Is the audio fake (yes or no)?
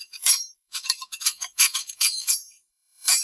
yes